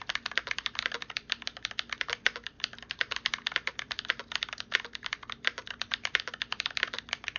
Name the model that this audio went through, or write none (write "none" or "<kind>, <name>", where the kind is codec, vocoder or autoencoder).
none